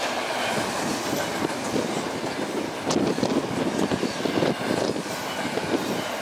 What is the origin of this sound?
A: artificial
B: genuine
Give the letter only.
B